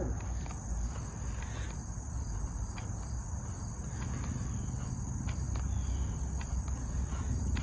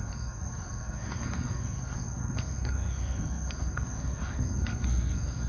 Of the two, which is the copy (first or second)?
second